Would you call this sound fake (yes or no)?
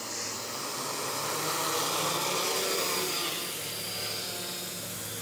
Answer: no